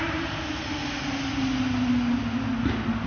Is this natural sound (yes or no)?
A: yes